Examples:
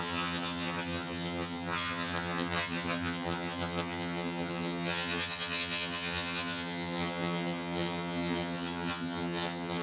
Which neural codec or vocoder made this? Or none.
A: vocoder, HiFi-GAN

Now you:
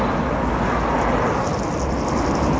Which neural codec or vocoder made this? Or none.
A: none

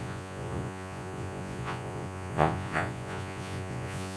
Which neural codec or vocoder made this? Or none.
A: vocoder, Vocos